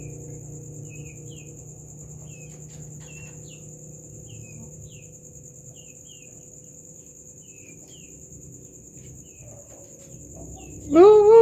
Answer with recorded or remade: recorded